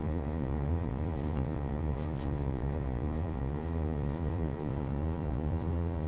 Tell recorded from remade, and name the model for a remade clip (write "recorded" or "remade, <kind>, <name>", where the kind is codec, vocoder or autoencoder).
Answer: remade, vocoder, Vocos